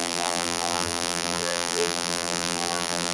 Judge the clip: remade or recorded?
remade